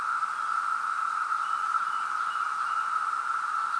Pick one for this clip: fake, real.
real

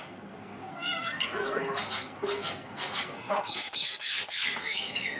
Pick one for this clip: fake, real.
fake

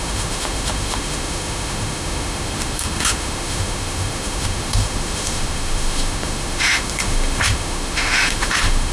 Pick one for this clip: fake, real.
fake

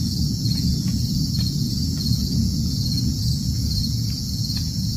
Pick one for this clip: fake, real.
fake